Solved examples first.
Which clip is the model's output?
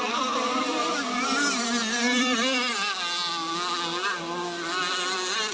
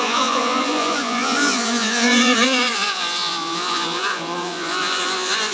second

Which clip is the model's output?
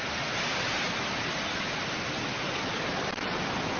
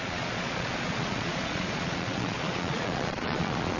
second